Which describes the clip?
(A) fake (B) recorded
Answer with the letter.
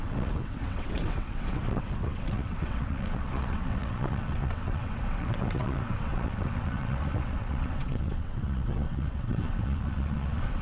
A